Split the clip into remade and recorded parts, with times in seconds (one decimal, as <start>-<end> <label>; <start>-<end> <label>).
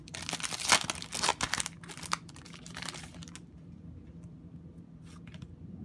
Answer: 0.0-5.8 recorded